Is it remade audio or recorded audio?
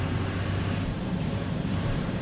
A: remade